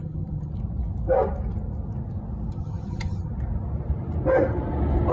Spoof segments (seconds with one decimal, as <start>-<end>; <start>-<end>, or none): 0.0-0.5; 2.5-3.3